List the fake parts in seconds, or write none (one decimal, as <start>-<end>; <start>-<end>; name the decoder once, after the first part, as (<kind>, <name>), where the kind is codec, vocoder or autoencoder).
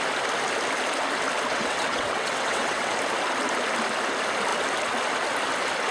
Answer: 1.5-2.9 (vocoder, WaveNeXt)